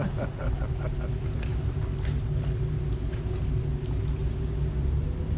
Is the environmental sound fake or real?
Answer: real